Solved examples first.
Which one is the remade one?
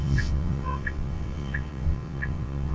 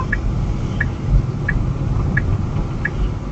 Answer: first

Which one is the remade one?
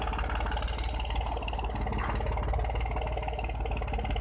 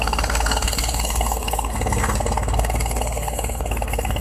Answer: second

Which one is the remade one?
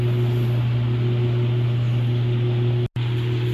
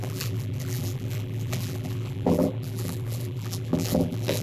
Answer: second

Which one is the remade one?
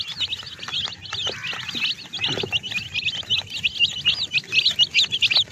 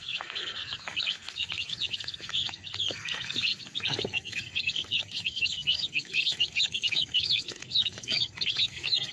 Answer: second